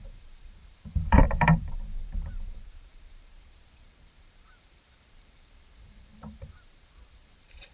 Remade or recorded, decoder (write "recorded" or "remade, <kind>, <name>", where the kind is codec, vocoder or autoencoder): remade, vocoder, BigVGAN v2